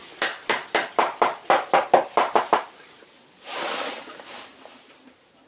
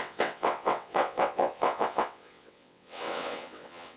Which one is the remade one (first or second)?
second